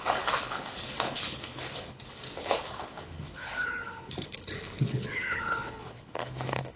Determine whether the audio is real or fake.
fake